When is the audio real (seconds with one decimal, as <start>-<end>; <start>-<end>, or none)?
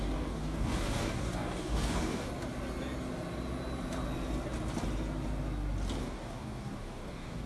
2.3-6.0